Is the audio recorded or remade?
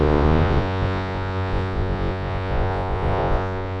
remade